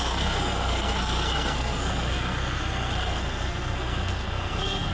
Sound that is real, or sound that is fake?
fake